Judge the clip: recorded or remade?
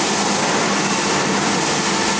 recorded